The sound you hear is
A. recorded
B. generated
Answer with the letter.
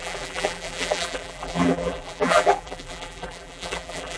B